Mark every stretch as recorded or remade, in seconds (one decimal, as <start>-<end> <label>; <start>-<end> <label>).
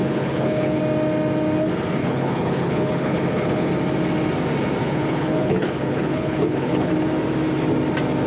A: 0.0-0.8 remade; 0.8-2.0 recorded; 2.0-3.7 remade; 3.7-4.8 recorded; 4.8-6.9 remade; 6.9-8.3 recorded